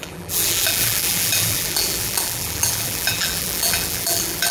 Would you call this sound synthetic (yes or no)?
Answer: yes